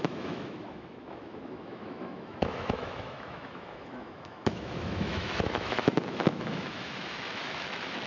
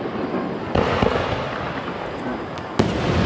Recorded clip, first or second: second